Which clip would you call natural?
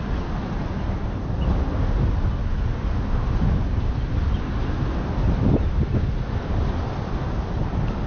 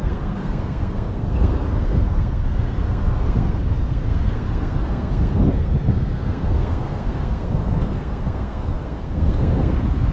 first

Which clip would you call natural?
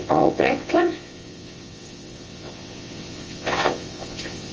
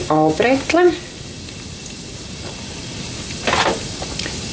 second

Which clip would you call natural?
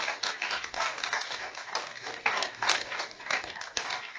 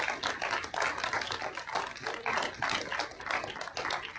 second